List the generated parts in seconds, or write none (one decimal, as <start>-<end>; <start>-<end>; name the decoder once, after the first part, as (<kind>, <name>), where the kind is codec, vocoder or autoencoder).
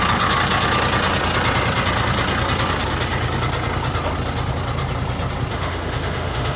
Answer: 5.5-6.6 (autoencoder, DAC-VAE)